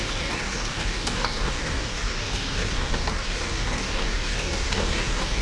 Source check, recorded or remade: remade